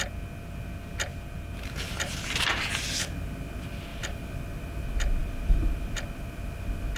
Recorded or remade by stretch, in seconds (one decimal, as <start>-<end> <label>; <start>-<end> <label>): 0.0-1.1 recorded; 1.1-1.7 remade; 1.7-3.9 recorded; 3.9-4.4 remade; 4.4-5.2 recorded; 5.2-6.1 remade; 6.1-7.0 recorded